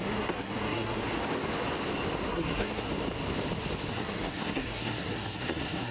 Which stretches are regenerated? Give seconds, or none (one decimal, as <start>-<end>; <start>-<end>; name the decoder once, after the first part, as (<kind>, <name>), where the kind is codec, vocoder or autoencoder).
0.0-1.0 (codec, SNAC); 2.3-2.9; 3.9-5.9